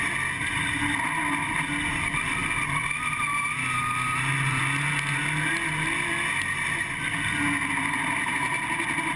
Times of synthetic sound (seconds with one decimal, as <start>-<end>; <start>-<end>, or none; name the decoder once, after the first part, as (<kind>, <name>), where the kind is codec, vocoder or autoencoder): none